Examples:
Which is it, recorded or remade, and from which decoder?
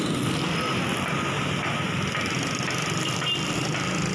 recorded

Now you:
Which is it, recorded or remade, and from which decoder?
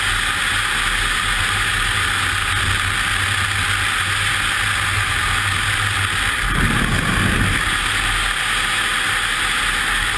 recorded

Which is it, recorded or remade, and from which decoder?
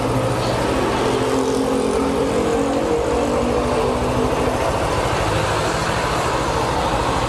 recorded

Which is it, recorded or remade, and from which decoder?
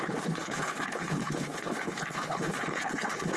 remade, codec, HILCodec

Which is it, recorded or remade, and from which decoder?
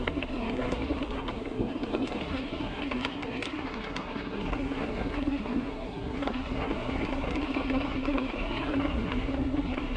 remade, codec, SNAC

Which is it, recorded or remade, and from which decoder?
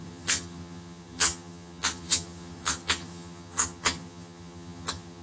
remade, vocoder, HiFi-GAN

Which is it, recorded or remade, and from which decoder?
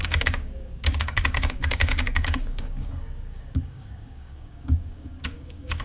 remade, codec, DAC